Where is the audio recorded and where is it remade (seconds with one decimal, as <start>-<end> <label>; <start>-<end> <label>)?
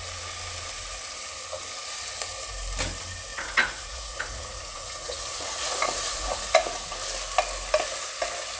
0.0-3.3 recorded; 3.3-6.9 remade; 6.9-8.6 recorded